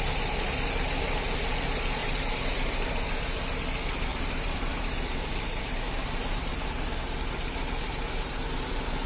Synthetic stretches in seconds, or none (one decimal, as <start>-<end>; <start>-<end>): 2.0-3.4; 4.1-6.5